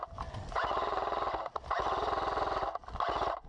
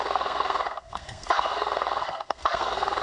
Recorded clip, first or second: first